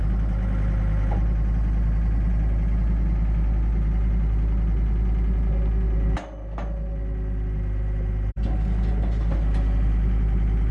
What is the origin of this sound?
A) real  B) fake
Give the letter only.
A